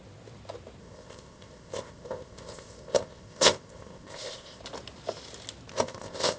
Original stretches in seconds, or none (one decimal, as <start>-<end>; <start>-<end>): 0.0-0.8; 4.6-5.7